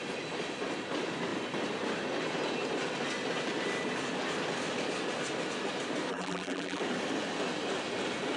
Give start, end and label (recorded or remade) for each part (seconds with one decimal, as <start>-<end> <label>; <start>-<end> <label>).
0.0-6.1 recorded; 6.1-6.8 remade; 6.8-8.4 recorded